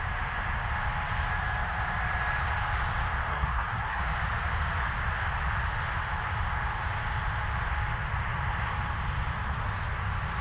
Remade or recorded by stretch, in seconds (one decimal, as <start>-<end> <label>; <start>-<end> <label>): 0.0-3.3 recorded; 3.3-4.0 remade; 4.0-10.4 recorded